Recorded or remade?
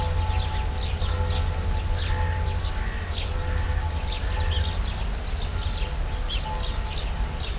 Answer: recorded